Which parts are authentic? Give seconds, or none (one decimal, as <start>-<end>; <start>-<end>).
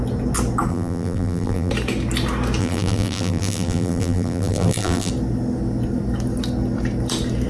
0.0-0.7; 1.7-2.6; 5.1-7.5